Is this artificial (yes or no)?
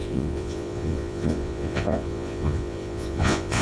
yes